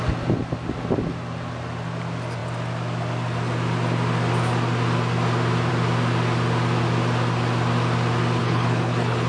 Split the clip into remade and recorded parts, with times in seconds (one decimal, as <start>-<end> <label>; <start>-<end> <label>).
0.0-8.4 recorded; 8.4-9.3 remade